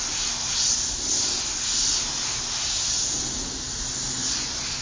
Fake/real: real